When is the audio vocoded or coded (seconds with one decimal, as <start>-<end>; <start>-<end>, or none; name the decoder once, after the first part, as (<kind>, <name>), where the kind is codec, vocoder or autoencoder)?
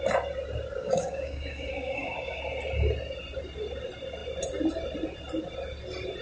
0.8-2.4 (codec, DAC)